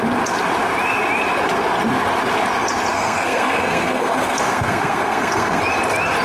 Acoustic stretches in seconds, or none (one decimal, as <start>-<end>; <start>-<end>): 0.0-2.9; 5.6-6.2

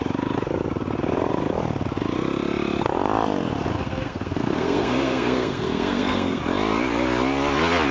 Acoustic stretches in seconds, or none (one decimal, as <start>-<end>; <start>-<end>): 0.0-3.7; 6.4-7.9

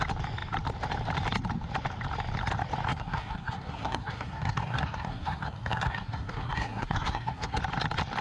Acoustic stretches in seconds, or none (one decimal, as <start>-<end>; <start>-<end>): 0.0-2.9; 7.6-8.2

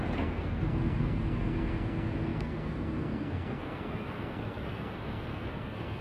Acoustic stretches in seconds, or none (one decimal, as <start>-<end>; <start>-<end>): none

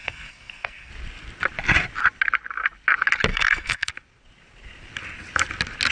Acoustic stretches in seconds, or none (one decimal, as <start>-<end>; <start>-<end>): 0.9-3.3; 3.9-5.9